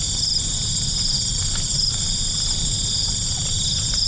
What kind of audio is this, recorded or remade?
recorded